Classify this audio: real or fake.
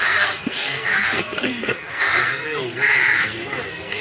fake